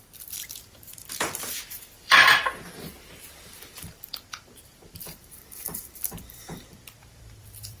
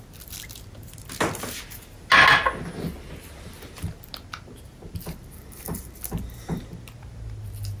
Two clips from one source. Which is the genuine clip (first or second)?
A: second